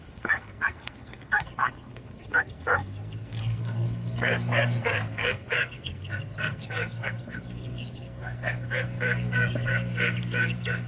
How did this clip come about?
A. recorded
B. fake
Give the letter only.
B